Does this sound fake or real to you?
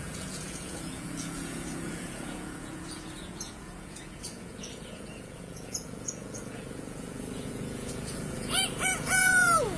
fake